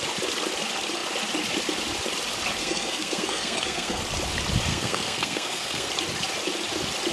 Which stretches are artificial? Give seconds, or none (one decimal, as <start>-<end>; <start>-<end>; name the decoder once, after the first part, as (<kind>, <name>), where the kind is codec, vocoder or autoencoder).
2.6-4.0 (codec, SNAC); 4.7-5.9